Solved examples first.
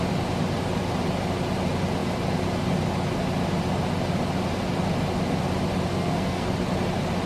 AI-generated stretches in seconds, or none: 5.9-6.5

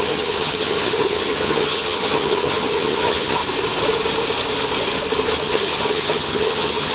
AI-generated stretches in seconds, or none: 0.0-3.4; 5.4-6.9

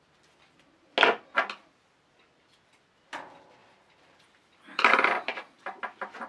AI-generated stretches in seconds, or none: 3.6-5.8